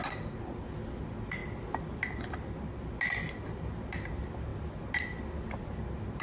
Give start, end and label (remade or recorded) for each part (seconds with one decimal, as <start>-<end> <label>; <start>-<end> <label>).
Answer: 0.0-6.2 recorded